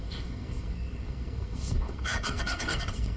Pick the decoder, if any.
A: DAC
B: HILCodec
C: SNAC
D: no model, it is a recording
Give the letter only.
C